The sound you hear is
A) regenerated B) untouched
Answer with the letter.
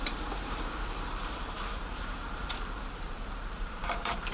A